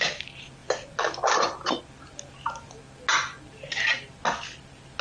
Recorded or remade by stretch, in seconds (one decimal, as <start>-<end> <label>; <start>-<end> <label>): 0.0-5.0 recorded